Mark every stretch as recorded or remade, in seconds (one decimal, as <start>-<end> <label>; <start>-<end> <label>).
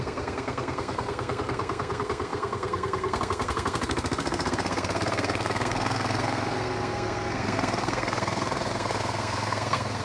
0.0-10.0 remade